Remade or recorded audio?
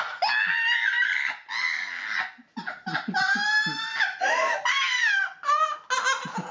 recorded